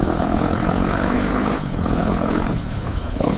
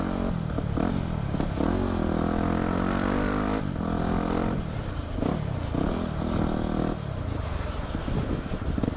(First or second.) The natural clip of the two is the second